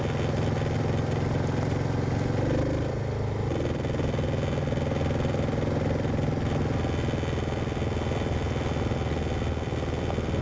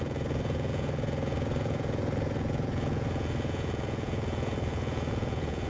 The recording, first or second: first